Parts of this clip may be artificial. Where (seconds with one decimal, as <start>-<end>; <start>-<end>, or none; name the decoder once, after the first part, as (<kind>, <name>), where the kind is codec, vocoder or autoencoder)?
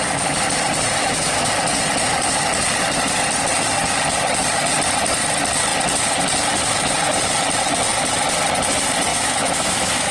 1.0-1.5 (autoencoder, DAC-VAE); 9.1-10.1